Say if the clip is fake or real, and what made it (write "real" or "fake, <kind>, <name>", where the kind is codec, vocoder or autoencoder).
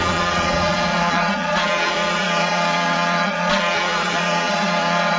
fake, vocoder, Vocos